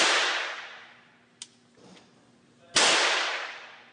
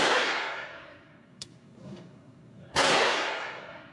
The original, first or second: first